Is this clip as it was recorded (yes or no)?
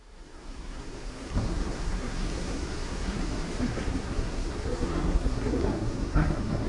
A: no